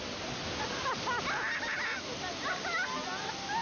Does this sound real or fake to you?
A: real